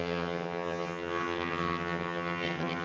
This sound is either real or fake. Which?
fake